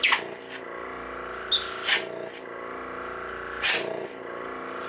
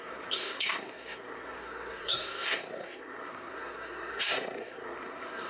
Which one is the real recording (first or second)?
first